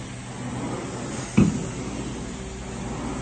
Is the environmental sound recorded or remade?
recorded